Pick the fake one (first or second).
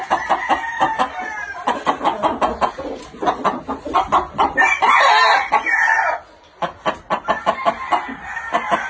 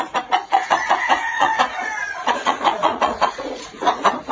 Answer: second